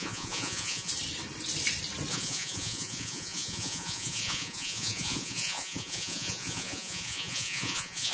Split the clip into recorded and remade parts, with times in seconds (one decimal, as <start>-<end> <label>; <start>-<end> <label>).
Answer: 0.0-0.9 remade; 0.9-2.1 recorded; 2.1-8.1 remade